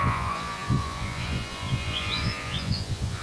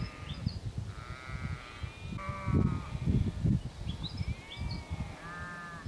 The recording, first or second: second